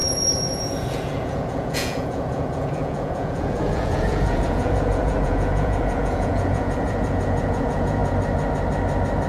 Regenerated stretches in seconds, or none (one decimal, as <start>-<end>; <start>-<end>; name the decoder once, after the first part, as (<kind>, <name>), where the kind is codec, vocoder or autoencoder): 0.0-8.0 (vocoder, Vocos)